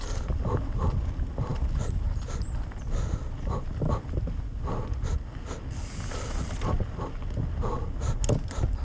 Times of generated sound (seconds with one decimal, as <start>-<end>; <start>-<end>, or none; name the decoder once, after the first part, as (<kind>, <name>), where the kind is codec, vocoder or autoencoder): none